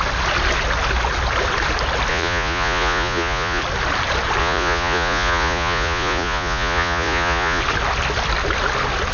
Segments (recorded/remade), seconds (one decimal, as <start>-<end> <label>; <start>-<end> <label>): 0.0-2.1 recorded; 2.1-3.6 remade; 3.6-4.4 recorded; 4.4-7.6 remade; 7.6-9.1 recorded